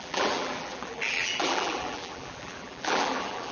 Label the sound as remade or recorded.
remade